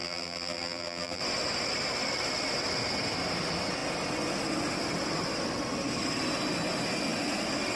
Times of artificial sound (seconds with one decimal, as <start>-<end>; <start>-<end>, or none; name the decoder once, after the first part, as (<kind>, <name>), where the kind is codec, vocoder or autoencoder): 0.0-1.2 (vocoder, BigVGAN v2)